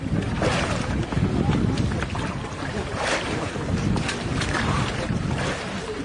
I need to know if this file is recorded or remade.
recorded